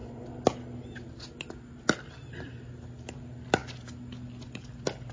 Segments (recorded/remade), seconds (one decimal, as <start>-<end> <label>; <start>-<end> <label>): 0.0-5.1 recorded